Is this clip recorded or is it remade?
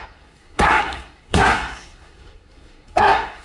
remade